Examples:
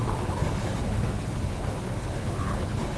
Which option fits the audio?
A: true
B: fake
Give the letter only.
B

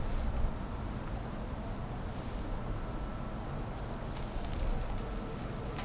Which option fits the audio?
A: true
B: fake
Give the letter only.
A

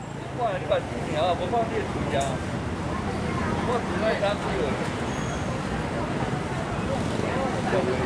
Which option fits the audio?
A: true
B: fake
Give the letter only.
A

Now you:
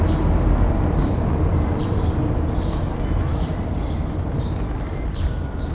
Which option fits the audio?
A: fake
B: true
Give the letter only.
B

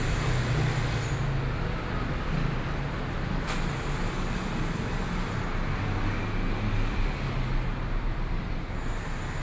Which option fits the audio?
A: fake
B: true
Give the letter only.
B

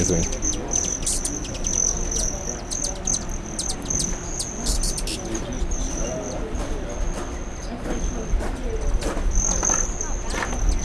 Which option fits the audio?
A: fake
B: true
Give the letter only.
B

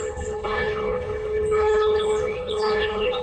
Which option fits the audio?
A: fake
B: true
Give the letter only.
A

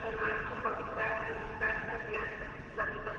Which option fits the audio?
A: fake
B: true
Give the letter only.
A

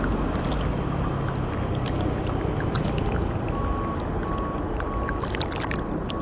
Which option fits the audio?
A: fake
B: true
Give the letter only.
B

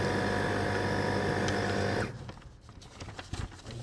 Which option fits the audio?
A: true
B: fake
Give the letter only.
A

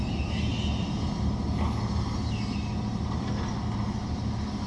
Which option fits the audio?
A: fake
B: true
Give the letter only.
B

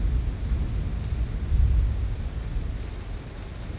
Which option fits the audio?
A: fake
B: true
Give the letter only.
B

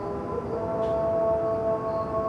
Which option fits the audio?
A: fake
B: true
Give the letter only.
B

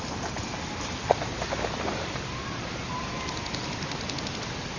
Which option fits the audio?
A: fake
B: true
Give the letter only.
B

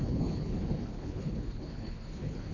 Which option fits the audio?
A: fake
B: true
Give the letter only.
A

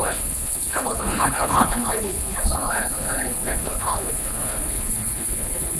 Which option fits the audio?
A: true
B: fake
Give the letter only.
B